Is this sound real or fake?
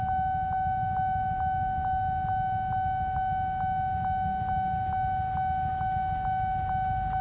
real